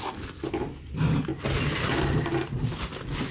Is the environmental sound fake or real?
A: real